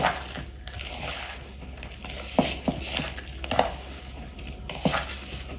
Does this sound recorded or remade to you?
recorded